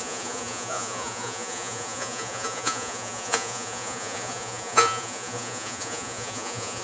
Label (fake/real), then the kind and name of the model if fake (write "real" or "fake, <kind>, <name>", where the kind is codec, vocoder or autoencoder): fake, vocoder, Vocos